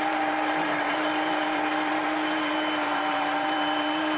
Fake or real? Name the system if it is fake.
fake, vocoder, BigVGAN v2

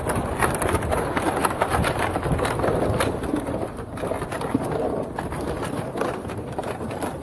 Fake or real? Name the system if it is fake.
real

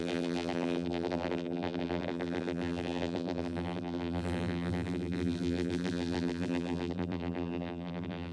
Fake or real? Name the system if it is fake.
fake, vocoder, BigVGAN v2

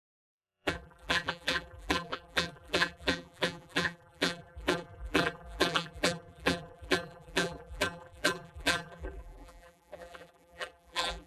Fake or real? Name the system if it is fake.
fake, vocoder, BigVGAN v2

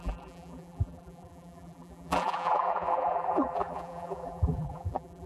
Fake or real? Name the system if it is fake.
fake, vocoder, BigVGAN v2